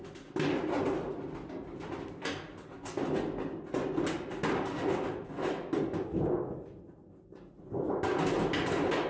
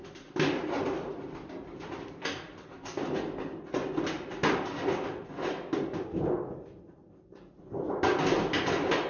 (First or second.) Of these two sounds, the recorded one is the first